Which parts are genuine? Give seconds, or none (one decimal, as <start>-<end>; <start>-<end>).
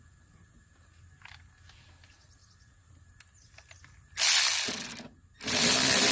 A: 0.0-6.1